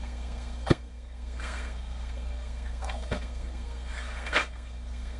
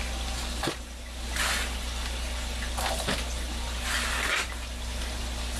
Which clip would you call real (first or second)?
second